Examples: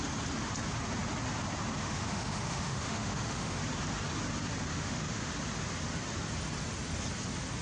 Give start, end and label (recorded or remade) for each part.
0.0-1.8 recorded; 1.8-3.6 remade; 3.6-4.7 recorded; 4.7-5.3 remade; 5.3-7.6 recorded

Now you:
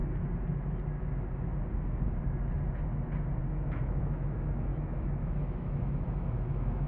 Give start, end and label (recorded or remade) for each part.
0.0-3.5 recorded; 3.5-6.9 remade

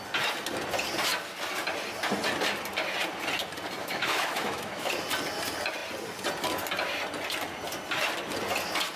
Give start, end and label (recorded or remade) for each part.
0.0-3.8 recorded; 3.8-4.9 remade; 4.9-9.0 recorded

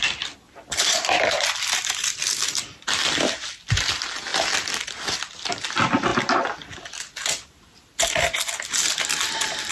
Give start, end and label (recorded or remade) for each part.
0.0-9.7 recorded

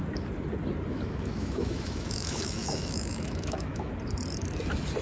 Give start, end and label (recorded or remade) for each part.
0.0-0.9 recorded; 0.9-3.9 remade; 3.9-5.0 recorded